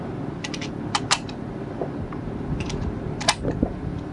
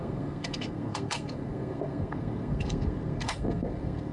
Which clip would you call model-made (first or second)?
second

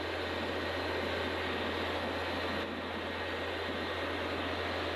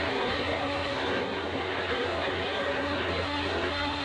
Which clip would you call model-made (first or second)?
second